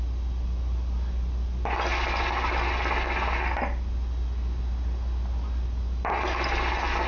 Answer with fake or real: real